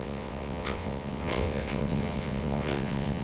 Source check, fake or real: fake